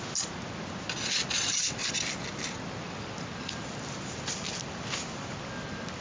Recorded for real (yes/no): yes